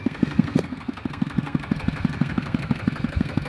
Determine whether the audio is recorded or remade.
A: remade